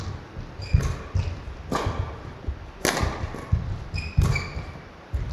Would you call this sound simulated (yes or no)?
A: no